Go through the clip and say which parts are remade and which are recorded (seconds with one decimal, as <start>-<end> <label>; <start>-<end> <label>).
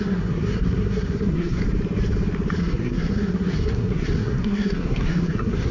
0.0-1.6 remade; 1.6-2.6 recorded; 2.6-5.7 remade